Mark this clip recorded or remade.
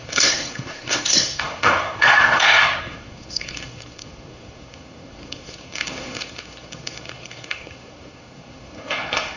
remade